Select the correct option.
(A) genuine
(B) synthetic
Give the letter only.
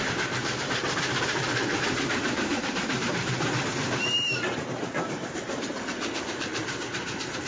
B